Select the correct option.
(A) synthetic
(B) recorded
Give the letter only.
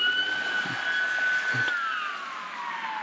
B